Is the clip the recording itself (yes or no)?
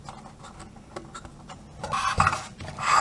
yes